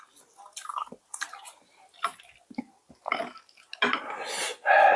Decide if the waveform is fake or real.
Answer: real